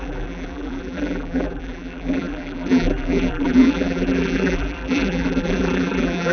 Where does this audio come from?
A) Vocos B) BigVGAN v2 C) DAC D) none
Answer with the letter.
B